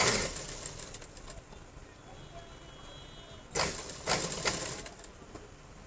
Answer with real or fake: real